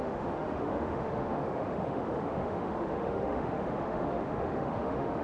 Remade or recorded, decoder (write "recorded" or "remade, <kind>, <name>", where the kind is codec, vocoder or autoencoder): remade, autoencoder, DAC-VAE